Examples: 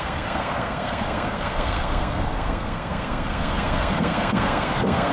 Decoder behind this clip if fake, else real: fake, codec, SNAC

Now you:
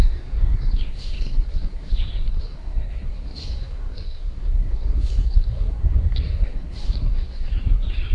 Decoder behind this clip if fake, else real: fake, codec, SNAC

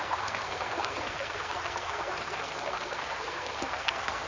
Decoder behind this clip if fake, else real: fake, codec, SNAC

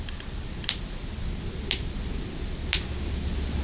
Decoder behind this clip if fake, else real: real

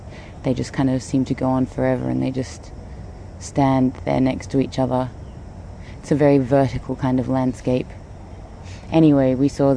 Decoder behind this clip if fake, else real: real